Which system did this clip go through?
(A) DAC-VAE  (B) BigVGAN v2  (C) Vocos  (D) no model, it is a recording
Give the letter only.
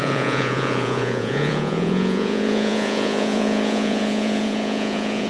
C